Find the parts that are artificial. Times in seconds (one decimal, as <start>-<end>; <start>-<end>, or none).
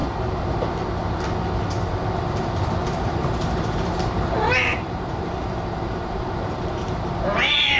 2.4-7.8